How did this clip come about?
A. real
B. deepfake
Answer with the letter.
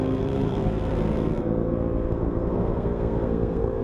B